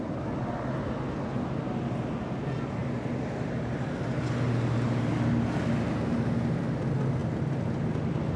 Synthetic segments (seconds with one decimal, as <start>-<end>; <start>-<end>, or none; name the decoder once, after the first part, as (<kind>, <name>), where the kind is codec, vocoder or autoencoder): none